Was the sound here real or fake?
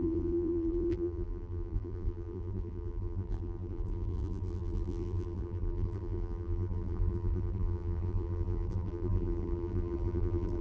fake